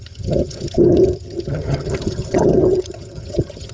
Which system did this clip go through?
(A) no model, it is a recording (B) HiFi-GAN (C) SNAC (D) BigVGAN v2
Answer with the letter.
B